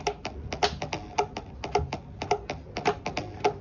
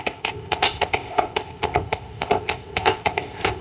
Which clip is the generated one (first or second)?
second